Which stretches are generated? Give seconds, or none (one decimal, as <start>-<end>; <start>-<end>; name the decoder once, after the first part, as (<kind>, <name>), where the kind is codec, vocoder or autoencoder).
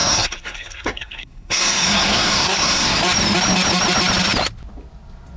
0.0-3.0 (codec, SNAC)